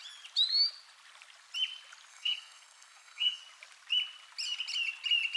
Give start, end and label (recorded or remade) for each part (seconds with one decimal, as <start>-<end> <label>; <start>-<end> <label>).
0.0-2.1 recorded; 2.1-3.4 remade; 3.4-5.4 recorded